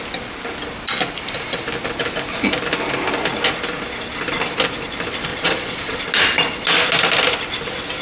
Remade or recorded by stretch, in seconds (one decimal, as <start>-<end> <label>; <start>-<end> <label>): 0.0-5.3 recorded; 5.3-6.0 remade; 6.0-8.0 recorded